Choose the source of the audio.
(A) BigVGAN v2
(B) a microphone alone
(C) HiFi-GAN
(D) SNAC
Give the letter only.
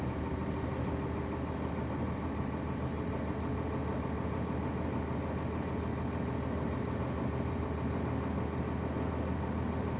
B